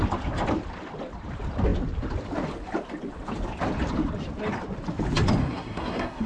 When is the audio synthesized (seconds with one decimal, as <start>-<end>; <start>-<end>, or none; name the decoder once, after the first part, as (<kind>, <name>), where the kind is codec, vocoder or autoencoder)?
5.4-6.3 (codec, SNAC)